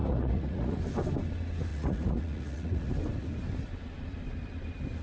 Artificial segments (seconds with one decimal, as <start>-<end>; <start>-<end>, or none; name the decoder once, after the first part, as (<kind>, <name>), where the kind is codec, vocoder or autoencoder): 0.0-0.8 (vocoder, Vocos); 1.7-2.9